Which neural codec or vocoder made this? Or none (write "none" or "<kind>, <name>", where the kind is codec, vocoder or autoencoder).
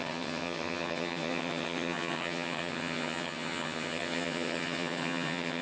vocoder, HiFi-GAN